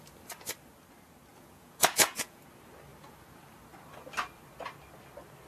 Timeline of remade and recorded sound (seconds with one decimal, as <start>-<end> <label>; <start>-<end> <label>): 0.0-1.3 recorded; 1.3-2.4 remade; 2.4-5.5 recorded